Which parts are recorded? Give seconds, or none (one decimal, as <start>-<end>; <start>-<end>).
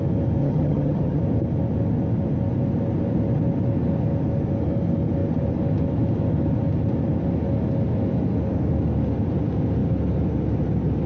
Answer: 0.0-0.4; 1.2-11.1